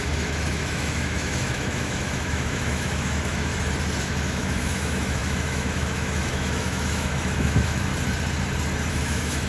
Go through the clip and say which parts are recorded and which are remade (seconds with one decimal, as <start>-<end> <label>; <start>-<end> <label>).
0.0-3.5 remade; 3.5-4.0 recorded; 4.0-7.9 remade; 7.9-8.9 recorded; 8.9-9.5 remade